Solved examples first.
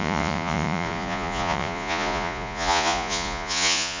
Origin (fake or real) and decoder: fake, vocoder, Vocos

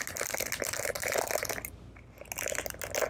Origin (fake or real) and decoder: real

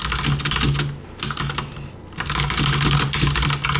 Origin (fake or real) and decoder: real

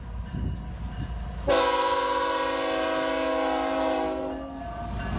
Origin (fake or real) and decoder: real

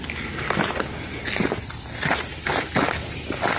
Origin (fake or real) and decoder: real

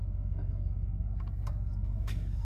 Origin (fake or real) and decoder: fake, codec, SNAC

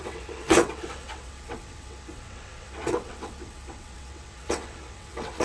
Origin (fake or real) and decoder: fake, vocoder, WaveNeXt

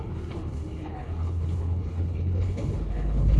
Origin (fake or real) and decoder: fake, codec, HILCodec